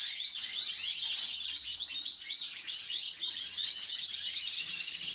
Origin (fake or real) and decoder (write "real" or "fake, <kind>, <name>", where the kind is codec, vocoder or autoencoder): fake, vocoder, Vocos